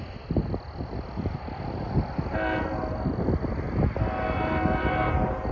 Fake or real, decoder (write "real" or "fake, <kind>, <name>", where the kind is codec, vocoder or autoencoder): real